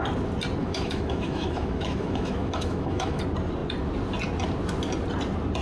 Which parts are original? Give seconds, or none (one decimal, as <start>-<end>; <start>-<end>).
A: 0.0-0.6; 3.2-5.6